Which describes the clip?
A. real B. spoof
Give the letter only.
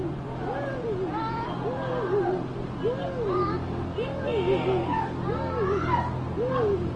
A